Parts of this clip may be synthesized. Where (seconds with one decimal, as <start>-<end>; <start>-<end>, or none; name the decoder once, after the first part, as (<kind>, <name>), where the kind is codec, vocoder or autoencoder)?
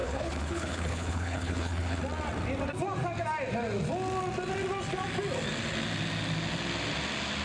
0.0-2.0 (codec, HILCodec)